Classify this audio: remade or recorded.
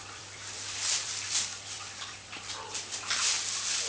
remade